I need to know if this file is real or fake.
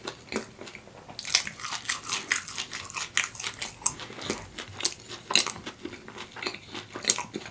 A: real